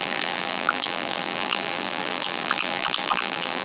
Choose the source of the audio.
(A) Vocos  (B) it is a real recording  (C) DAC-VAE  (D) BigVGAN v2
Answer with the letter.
D